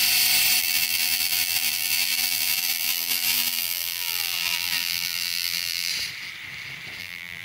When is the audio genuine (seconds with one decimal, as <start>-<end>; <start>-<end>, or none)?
0.0-0.6; 5.9-7.0